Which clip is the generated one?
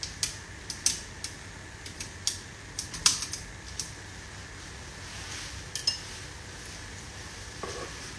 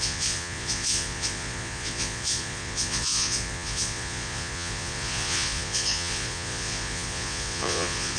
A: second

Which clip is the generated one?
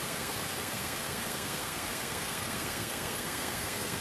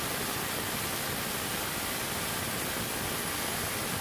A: first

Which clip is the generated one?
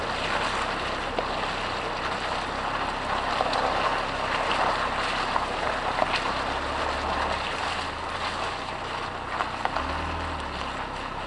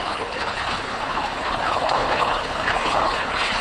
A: second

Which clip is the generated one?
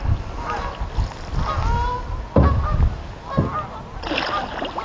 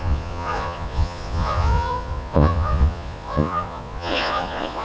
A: second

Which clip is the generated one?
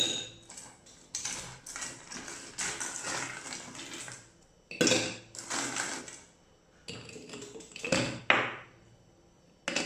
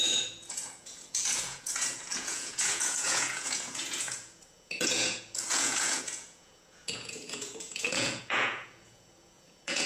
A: second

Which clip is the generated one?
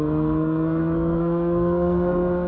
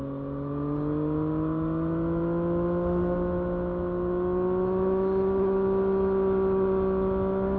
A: first